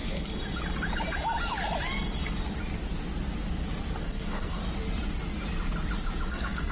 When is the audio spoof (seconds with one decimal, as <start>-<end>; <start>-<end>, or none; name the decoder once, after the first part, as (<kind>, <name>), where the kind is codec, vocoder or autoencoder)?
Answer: 4.0-4.6 (codec, SNAC); 6.3-6.7